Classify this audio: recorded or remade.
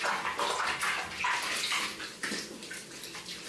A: recorded